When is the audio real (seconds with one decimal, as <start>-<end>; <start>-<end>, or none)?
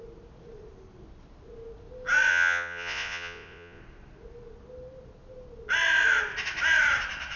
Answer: 0.0-2.3; 3.8-7.4